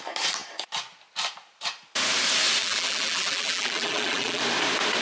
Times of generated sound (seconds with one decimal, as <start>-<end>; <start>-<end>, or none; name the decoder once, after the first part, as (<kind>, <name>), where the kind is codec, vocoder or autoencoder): 2.6-4.4 (vocoder, BigVGAN v2)